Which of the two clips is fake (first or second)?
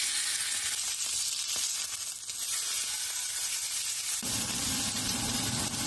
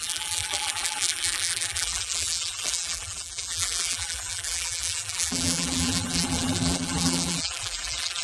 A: second